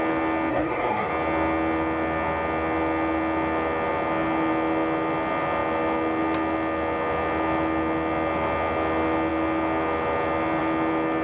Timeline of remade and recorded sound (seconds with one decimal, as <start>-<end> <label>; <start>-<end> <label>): 0.0-0.5 recorded; 0.5-1.1 remade; 1.1-11.2 recorded